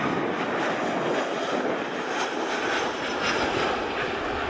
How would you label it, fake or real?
real